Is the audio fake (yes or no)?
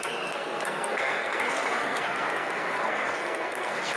yes